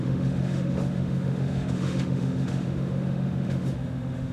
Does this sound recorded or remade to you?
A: remade